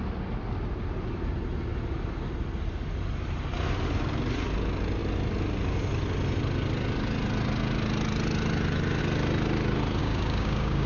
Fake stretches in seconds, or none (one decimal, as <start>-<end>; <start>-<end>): 10.0-10.9